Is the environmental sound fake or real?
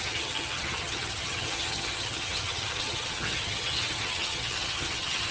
fake